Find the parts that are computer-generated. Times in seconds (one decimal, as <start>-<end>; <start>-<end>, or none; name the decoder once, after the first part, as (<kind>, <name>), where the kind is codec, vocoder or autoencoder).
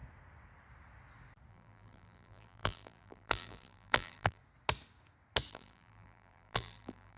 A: 1.5-4.4 (vocoder, BigVGAN v2); 5.5-7.2